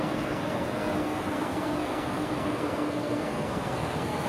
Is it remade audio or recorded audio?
remade